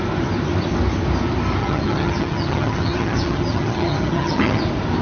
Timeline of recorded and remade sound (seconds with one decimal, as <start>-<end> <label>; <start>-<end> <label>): 0.0-1.6 recorded; 1.6-4.6 remade; 4.6-5.0 recorded